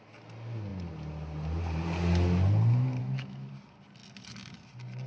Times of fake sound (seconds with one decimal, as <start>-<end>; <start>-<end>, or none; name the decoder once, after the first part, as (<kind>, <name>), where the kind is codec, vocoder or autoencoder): 3.0-3.5 (autoencoder, DAC-VAE)